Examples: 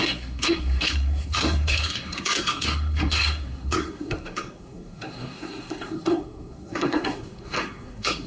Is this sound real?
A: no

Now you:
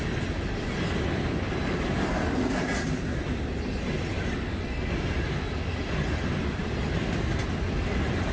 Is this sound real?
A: yes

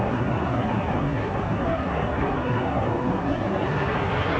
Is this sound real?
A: no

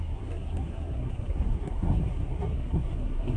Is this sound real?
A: no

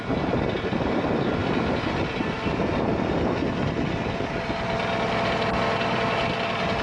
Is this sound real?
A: yes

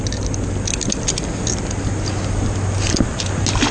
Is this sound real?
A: yes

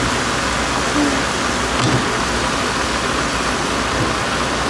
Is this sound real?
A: yes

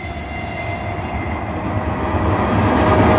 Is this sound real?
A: yes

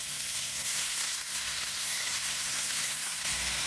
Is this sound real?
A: no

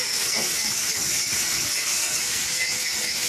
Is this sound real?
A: no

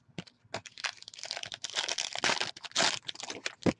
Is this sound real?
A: yes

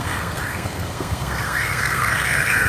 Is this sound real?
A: no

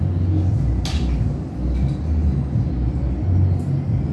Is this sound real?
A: yes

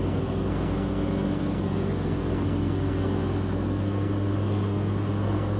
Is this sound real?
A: no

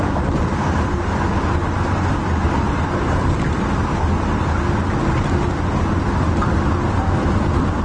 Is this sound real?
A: yes